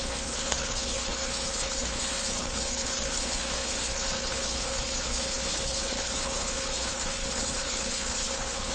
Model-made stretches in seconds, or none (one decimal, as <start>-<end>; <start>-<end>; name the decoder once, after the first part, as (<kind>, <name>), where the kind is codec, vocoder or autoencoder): 0.0-8.7 (codec, HILCodec)